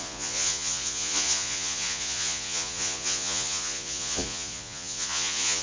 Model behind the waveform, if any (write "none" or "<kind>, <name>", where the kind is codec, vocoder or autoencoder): vocoder, Vocos